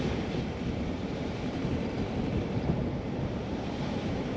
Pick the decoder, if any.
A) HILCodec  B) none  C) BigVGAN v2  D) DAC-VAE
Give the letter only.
C